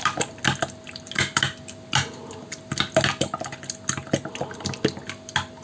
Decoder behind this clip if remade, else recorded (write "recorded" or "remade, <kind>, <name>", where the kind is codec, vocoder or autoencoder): recorded